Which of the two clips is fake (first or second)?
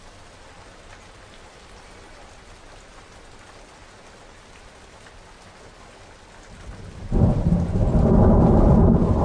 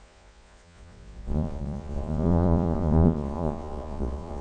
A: second